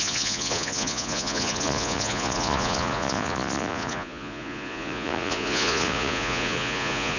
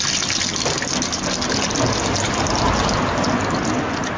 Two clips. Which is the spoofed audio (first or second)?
first